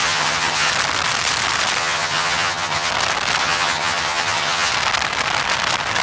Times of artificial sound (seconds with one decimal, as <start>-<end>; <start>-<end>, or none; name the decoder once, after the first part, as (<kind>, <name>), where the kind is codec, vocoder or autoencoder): 0.0-0.7 (vocoder, HiFi-GAN); 1.8-2.9; 3.4-4.7